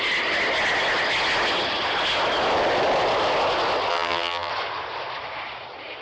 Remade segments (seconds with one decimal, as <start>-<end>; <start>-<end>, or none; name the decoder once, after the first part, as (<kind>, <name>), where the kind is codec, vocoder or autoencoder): 3.9-4.5 (vocoder, HiFi-GAN)